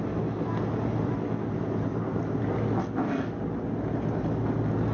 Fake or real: real